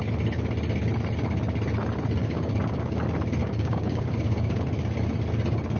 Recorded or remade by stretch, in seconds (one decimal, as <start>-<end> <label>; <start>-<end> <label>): 0.0-2.2 recorded; 2.2-3.0 remade; 3.0-3.4 recorded; 3.4-4.6 remade; 4.6-5.8 recorded